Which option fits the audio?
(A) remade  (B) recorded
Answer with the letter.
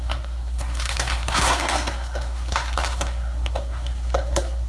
A